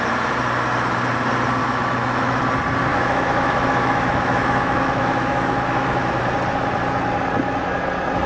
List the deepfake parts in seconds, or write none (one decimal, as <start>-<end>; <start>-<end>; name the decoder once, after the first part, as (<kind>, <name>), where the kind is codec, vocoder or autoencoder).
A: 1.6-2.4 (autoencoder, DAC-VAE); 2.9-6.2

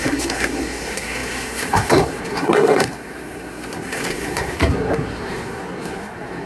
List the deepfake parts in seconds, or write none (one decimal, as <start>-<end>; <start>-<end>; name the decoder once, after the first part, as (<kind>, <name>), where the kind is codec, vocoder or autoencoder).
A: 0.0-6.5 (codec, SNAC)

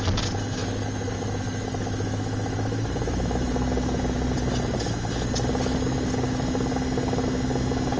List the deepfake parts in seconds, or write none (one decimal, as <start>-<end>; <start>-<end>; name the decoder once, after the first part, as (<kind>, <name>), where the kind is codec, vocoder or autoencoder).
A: 0.6-3.5 (autoencoder, DAC-VAE)